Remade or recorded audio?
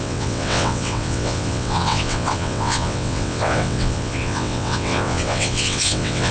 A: remade